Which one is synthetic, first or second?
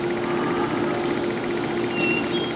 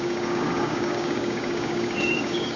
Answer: second